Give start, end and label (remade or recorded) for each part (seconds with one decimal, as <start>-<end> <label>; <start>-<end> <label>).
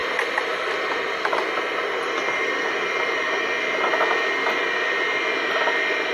0.0-3.7 remade; 3.7-6.1 recorded